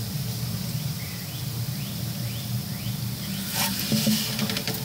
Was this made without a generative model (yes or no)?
yes